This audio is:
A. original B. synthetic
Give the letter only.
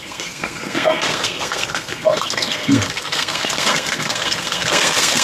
B